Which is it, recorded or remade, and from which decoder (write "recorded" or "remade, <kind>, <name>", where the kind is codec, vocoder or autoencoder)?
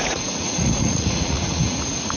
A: remade, vocoder, Vocos